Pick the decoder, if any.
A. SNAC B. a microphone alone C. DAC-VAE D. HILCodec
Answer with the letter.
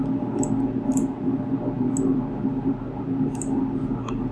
B